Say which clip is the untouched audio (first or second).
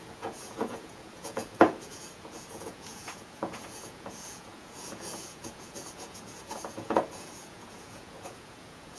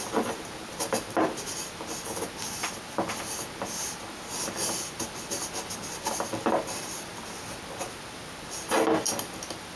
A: second